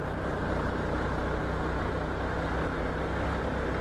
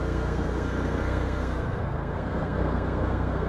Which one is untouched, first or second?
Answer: first